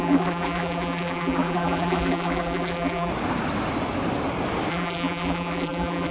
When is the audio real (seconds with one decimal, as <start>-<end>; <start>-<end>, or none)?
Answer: 3.1-4.7